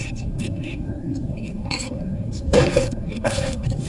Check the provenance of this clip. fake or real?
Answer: fake